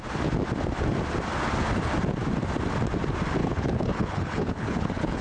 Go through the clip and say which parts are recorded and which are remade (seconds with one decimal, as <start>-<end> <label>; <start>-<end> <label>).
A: 0.0-3.4 recorded; 3.4-5.2 remade